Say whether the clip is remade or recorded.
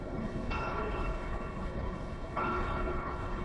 remade